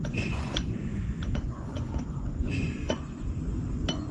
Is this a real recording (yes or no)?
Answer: no